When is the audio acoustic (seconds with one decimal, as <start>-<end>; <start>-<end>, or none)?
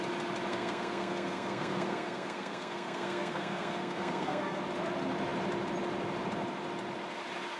0.0-0.5; 4.6-7.6